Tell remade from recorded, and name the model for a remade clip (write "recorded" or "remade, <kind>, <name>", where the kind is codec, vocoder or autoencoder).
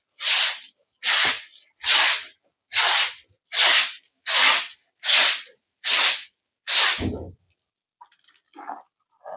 recorded